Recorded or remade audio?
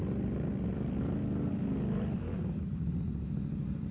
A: recorded